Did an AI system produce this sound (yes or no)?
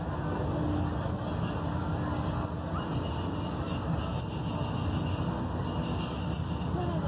no